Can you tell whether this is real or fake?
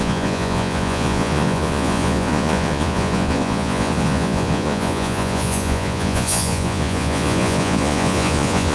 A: fake